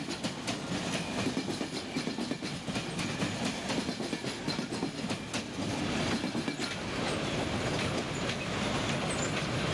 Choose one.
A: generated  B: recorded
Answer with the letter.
B